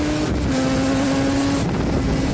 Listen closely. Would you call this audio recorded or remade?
recorded